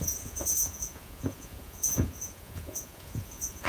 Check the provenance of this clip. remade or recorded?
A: remade